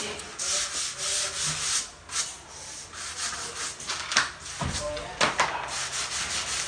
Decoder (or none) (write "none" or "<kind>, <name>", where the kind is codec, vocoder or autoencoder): none